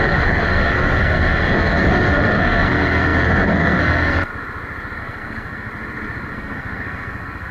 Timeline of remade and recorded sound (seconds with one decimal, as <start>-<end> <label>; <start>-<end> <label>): 0.0-4.3 remade; 4.3-5.0 recorded; 5.0-5.7 remade; 5.7-6.3 recorded; 6.3-7.5 remade